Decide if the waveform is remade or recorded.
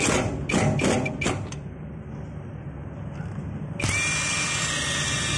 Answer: recorded